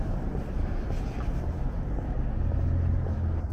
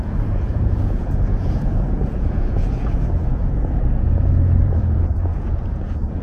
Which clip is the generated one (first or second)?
second